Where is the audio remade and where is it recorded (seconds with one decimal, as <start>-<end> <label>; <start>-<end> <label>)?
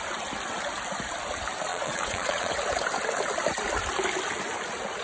0.0-1.7 recorded; 1.7-2.5 remade; 2.5-5.0 recorded